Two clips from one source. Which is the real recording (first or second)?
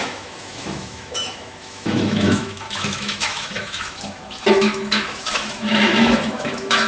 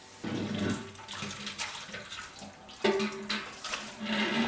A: second